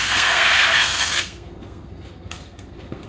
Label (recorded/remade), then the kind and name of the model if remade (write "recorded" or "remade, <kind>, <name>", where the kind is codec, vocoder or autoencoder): remade, codec, SNAC